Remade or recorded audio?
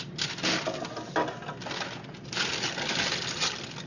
recorded